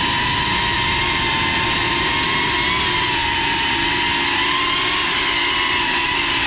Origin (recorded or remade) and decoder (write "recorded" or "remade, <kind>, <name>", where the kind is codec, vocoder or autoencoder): recorded